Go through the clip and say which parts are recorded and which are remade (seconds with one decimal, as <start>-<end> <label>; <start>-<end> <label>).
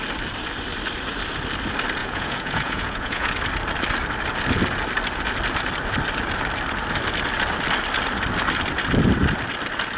0.0-2.0 recorded; 2.0-3.3 remade; 3.3-10.0 recorded